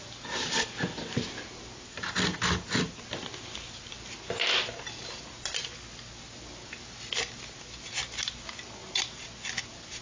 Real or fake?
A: real